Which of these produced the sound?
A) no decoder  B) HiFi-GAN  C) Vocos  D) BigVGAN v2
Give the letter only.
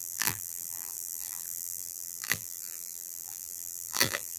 D